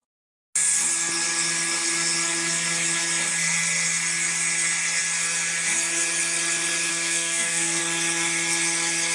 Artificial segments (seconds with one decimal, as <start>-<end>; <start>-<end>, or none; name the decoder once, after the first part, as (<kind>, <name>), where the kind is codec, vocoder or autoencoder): 6.9-7.8 (codec, SNAC)